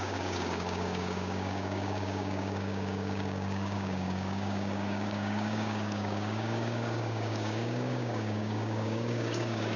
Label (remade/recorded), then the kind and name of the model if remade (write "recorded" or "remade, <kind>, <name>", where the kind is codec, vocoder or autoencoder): remade, codec, DAC